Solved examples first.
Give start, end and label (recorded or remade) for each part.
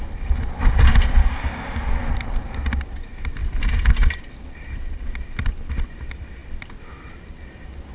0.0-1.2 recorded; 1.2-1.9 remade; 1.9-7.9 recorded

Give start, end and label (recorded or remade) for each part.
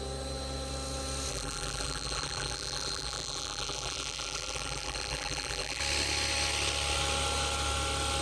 0.0-1.3 recorded; 1.3-5.8 remade; 5.8-8.2 recorded